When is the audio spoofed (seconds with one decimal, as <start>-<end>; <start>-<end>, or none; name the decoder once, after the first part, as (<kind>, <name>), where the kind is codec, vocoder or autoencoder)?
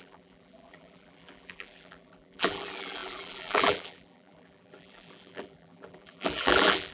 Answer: 0.0-6.9 (vocoder, BigVGAN v2)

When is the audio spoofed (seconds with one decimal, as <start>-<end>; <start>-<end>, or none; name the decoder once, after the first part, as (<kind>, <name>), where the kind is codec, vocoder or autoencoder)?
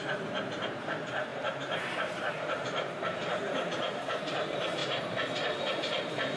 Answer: 0.0-4.8 (vocoder, BigVGAN v2); 5.6-6.4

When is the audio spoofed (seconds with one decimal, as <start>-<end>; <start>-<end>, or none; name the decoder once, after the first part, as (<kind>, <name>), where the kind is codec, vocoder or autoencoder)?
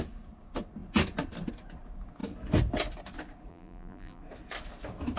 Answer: 3.5-4.2 (vocoder, BigVGAN v2)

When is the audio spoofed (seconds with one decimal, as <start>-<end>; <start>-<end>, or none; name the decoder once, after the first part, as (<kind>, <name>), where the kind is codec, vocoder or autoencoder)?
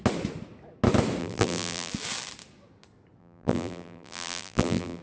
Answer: 1.2-1.9 (vocoder, BigVGAN v2); 3.2-5.0